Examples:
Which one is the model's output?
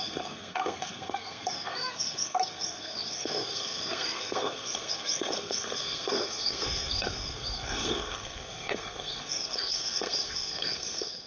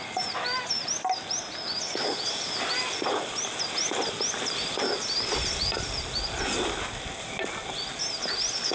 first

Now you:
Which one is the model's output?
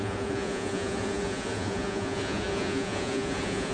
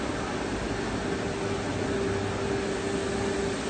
first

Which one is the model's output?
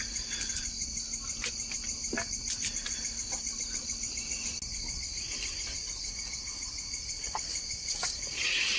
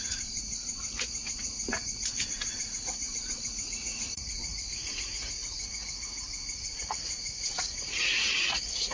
second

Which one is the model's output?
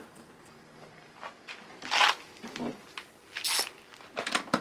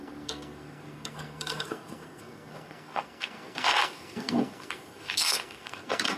second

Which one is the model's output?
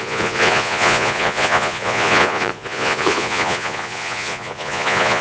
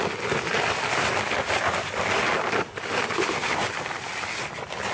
first